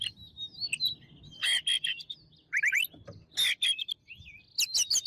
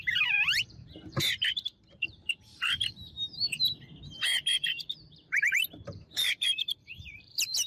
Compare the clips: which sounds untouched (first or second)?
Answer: first